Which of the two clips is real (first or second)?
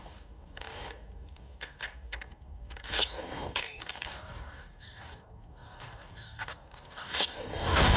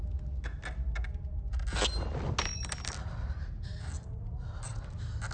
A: second